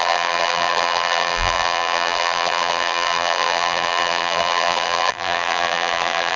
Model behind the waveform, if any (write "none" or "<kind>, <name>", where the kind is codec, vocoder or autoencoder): vocoder, BigVGAN v2